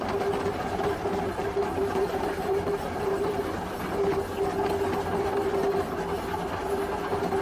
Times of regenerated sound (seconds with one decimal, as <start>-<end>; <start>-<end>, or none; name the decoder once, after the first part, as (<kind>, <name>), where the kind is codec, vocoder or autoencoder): 0.5-3.8 (vocoder, BigVGAN v2)